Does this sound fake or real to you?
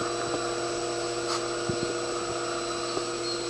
real